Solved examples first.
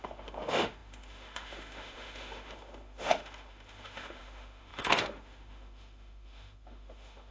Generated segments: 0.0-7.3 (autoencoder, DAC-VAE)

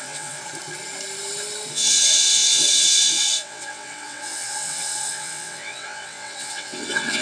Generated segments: 0.0-0.4 (vocoder, WaveNeXt); 1.7-7.2

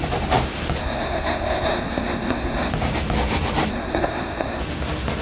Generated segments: 0.8-2.7 (codec, SNAC); 3.7-4.6

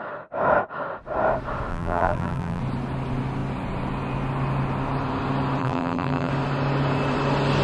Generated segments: 1.7-2.6 (vocoder, BigVGAN v2); 5.6-6.3

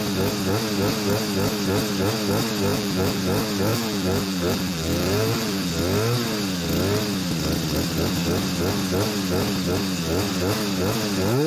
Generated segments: 2.7-3.2 (vocoder, BigVGAN v2); 3.7-5.7

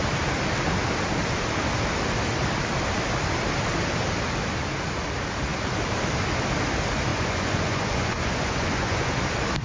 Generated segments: 7.1-9.1 (vocoder, Vocos)

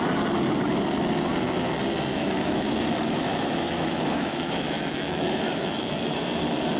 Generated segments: 2.1-6.2 (autoencoder, DAC-VAE)